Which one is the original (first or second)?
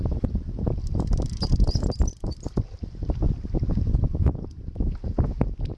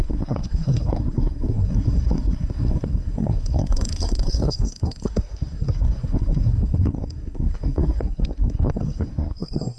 first